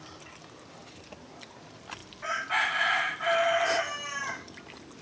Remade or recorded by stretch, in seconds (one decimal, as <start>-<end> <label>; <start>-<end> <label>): 0.0-5.0 recorded